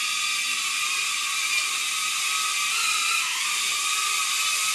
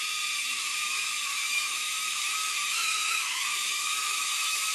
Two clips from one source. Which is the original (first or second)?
first